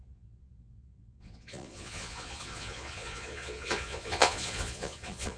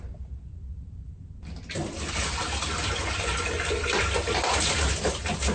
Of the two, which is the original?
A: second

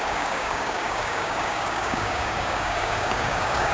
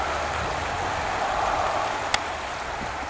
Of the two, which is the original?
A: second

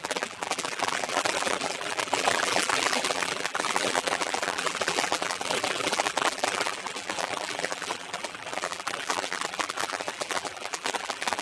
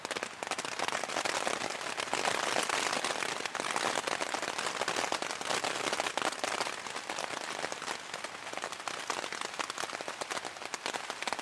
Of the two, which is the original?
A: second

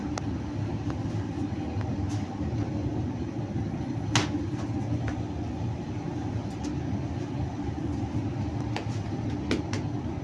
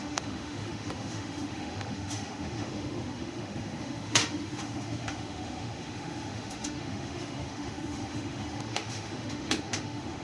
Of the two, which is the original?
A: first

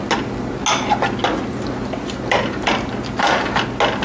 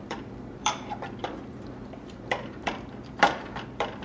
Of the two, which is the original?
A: first